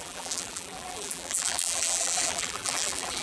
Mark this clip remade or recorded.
remade